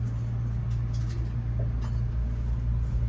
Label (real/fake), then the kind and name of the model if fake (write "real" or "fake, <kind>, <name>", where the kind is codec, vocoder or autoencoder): real